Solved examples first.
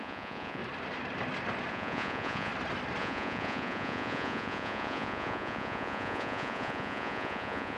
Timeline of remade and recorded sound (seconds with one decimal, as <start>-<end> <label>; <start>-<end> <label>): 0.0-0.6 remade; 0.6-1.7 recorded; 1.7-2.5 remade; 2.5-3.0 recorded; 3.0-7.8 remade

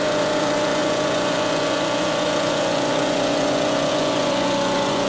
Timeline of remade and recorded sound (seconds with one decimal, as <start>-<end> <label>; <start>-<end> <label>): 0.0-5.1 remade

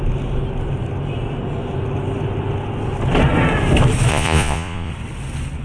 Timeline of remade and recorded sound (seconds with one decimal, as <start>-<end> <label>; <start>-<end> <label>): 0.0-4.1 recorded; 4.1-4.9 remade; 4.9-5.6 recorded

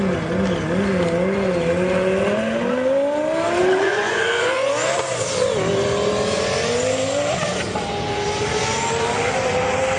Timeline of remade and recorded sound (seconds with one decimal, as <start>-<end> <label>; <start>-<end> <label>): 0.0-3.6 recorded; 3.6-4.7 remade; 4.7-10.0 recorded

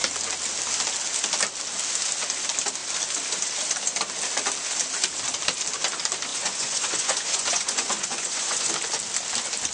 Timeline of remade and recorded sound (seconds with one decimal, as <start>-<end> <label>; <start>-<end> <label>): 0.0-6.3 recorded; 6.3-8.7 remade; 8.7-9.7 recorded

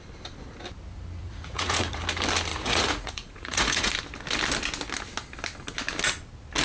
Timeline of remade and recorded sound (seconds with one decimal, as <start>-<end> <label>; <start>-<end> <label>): 0.0-1.2 recorded; 1.2-2.0 remade; 2.0-2.5 recorded; 2.5-3.9 remade; 3.9-6.6 recorded

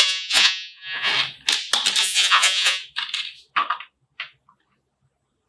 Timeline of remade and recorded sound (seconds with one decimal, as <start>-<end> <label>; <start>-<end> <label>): 0.0-1.1 remade; 1.1-2.0 recorded; 2.0-2.8 remade; 2.8-5.5 recorded

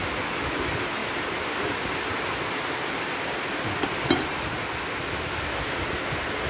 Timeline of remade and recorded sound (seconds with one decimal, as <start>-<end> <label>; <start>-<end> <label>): 0.0-6.5 recorded